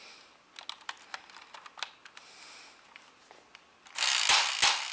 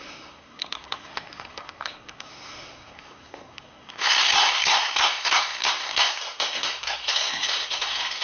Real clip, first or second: first